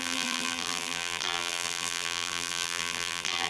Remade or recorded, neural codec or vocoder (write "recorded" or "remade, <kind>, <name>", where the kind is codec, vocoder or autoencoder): remade, vocoder, BigVGAN v2